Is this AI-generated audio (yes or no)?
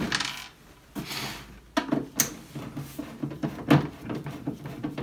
no